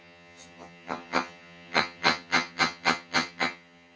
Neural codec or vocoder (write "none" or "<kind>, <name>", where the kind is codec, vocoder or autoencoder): vocoder, HiFi-GAN